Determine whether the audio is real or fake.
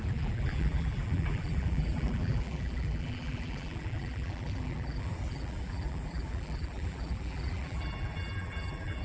fake